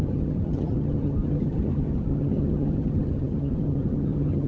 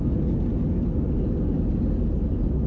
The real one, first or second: second